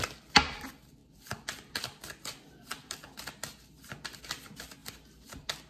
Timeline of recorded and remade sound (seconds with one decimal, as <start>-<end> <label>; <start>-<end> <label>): 0.0-5.7 recorded